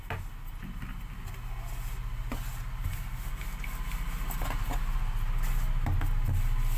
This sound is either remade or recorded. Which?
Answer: recorded